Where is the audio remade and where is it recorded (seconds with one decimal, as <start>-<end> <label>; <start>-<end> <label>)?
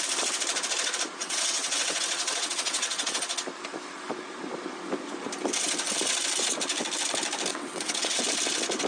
0.0-1.2 recorded; 1.2-3.2 remade; 3.2-7.5 recorded; 7.5-8.2 remade; 8.2-8.9 recorded